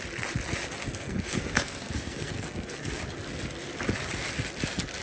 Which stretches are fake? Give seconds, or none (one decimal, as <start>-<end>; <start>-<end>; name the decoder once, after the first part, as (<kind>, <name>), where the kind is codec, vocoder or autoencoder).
0.8-3.0 (codec, SNAC)